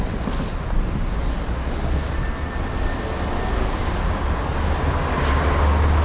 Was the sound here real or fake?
real